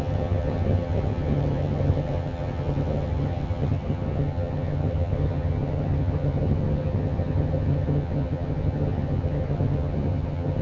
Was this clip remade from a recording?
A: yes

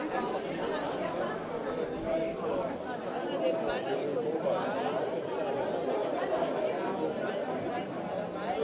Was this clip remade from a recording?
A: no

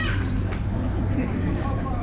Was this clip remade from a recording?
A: yes